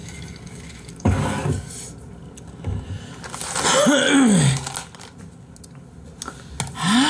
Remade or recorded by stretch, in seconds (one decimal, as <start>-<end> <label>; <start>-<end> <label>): 0.0-1.7 remade; 1.7-7.1 recorded